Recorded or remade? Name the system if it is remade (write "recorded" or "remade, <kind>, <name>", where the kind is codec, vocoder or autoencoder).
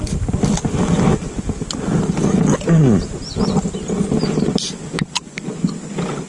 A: recorded